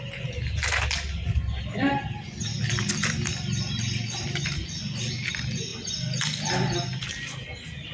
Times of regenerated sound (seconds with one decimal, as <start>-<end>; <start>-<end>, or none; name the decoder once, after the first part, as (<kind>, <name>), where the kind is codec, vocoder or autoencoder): none